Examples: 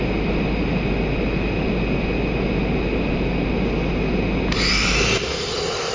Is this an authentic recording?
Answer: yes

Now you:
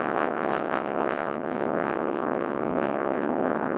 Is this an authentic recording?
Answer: no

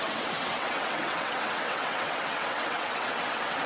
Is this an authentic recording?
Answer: no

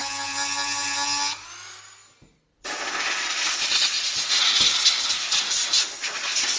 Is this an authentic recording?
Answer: yes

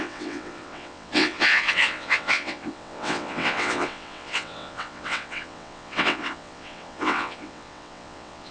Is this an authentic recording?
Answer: no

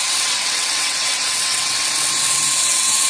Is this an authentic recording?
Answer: no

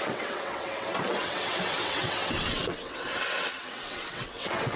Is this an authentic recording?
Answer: no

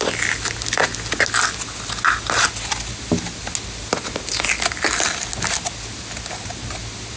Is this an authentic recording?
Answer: yes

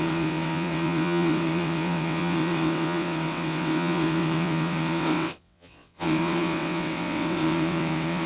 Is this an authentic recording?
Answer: no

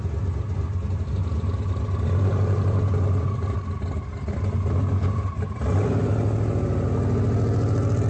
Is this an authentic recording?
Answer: yes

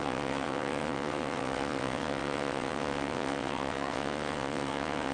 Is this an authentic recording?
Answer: no